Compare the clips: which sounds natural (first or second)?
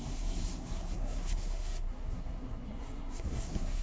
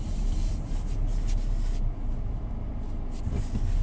second